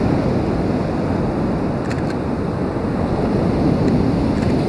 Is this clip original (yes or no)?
yes